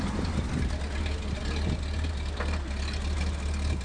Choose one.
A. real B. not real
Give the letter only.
A